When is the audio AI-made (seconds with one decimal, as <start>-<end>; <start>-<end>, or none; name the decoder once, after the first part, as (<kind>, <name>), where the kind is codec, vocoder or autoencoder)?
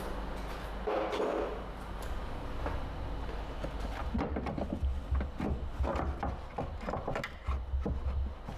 none